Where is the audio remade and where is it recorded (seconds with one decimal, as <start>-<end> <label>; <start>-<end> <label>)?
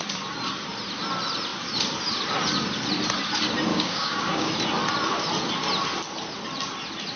0.0-3.7 recorded; 3.7-4.5 remade; 4.5-7.2 recorded